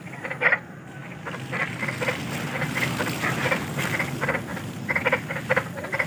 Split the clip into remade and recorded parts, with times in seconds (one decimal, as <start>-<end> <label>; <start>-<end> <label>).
0.0-6.1 recorded